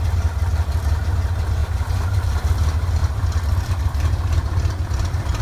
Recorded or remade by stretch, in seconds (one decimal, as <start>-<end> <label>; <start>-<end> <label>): 0.0-1.6 recorded; 1.6-2.4 remade; 2.4-3.0 recorded; 3.0-5.4 remade